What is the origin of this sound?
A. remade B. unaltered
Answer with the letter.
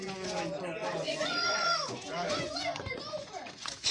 A